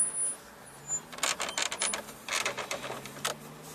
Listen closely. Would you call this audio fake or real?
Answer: real